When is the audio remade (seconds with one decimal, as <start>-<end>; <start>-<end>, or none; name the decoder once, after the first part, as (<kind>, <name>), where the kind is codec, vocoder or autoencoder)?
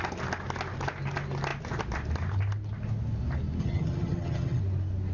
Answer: 3.6-4.6 (vocoder, HiFi-GAN)